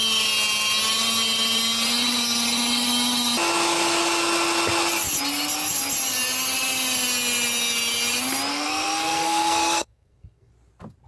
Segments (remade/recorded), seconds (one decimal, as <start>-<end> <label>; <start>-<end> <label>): 0.0-8.5 recorded; 8.5-10.5 remade; 10.5-11.1 recorded